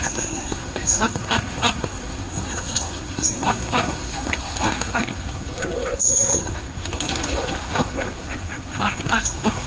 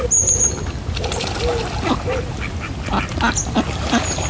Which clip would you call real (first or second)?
second